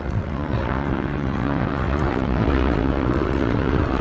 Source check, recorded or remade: remade